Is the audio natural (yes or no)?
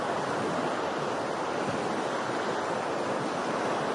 yes